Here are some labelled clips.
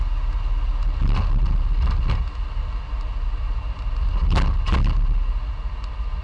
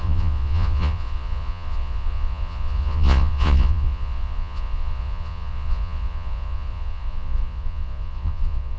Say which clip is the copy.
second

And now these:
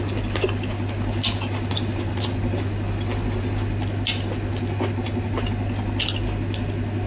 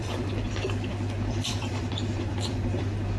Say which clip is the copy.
second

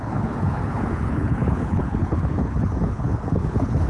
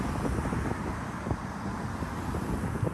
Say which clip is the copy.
first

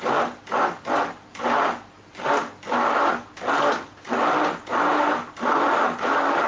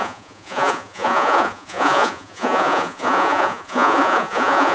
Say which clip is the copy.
second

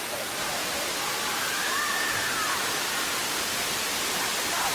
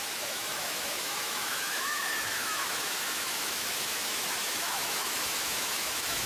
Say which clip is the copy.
second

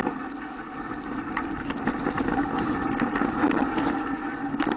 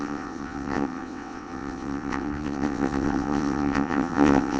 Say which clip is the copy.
second